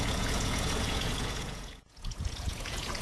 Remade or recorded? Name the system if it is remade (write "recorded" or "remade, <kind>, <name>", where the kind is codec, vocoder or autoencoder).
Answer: remade, vocoder, Vocos